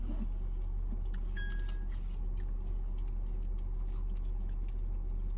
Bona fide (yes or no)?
yes